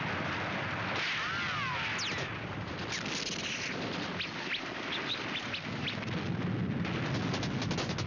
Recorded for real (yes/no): yes